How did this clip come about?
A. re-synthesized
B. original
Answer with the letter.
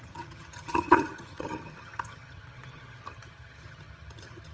A